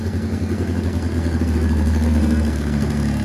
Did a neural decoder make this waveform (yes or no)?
yes